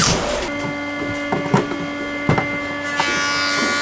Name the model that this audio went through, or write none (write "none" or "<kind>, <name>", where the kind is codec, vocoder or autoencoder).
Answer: none